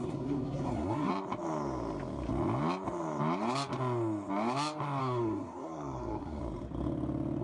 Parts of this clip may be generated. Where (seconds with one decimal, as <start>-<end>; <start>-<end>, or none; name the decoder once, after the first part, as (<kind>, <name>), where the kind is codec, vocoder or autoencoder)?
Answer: 0.0-1.1 (codec, SNAC); 5.0-6.4